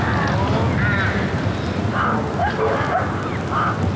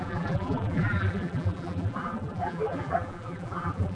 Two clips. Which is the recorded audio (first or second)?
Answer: first